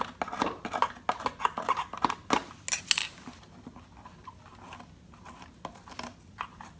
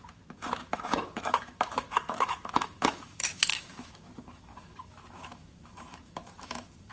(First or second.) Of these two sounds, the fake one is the second